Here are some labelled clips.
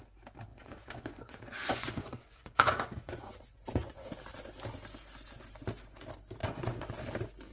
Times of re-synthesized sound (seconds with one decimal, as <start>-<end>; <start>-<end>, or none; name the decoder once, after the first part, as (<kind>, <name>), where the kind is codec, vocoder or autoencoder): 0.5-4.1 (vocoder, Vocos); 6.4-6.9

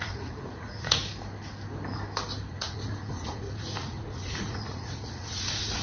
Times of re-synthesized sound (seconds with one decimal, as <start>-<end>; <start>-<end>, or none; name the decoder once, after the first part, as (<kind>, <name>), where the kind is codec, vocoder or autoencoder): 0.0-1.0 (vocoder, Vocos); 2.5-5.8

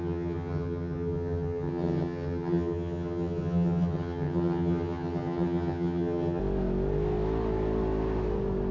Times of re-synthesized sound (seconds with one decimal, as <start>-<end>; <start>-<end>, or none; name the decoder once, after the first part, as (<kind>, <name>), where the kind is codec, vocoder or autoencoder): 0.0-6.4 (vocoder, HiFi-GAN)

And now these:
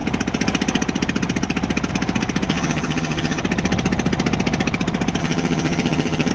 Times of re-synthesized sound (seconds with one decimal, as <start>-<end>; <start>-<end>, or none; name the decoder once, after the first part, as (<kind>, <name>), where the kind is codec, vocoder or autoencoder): 2.5-3.4 (vocoder, HiFi-GAN); 5.2-6.3

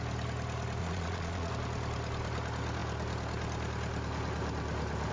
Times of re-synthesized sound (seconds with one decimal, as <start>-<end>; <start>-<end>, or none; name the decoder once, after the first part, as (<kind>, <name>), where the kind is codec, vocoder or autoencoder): 0.8-1.5 (vocoder, Vocos)